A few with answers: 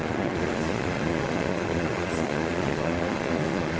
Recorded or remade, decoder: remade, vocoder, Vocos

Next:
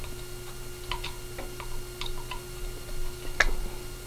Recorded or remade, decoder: recorded